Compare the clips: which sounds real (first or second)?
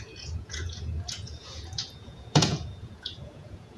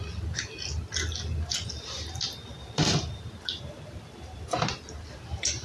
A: second